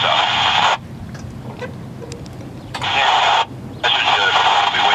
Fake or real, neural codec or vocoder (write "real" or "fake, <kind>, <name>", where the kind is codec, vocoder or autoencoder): real